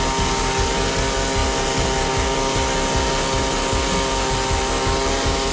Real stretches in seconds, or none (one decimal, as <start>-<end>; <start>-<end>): 0.0-5.5